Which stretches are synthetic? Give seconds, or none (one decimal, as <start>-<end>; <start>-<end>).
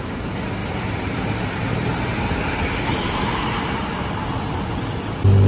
0.6-3.9